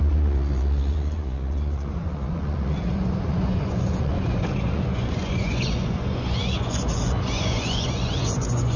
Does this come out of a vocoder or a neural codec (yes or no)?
yes